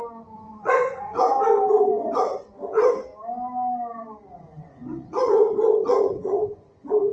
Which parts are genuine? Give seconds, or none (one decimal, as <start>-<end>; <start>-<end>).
1.1-1.7; 3.1-4.4